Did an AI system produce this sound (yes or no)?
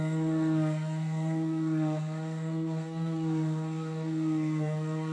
yes